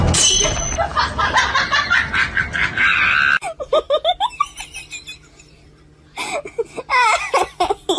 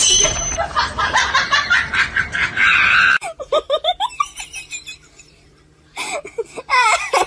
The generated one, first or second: second